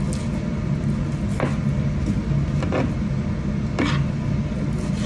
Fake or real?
real